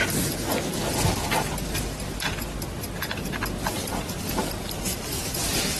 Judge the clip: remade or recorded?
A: recorded